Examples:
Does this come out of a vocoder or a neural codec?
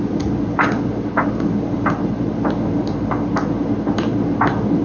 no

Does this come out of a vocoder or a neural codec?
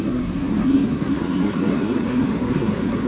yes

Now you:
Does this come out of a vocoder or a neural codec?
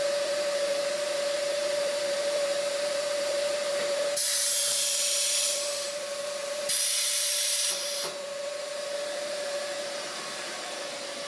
yes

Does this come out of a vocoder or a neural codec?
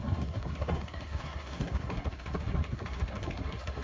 yes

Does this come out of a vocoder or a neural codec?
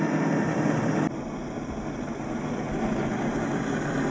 no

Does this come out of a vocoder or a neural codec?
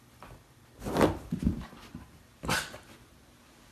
no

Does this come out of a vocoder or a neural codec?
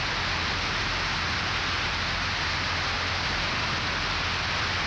no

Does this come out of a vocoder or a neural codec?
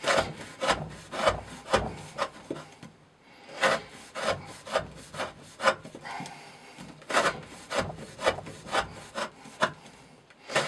no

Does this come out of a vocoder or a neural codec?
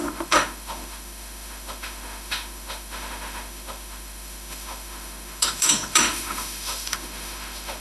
yes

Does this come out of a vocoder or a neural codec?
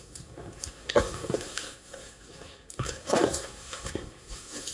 yes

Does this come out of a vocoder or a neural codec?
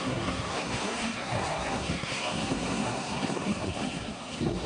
yes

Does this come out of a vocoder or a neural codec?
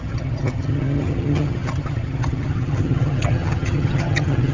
yes